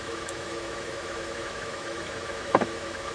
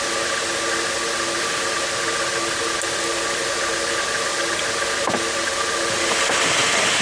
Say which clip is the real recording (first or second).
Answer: second